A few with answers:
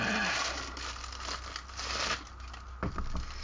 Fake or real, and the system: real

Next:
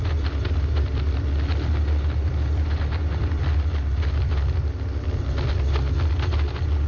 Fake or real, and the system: real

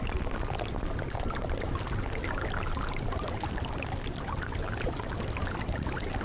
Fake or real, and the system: real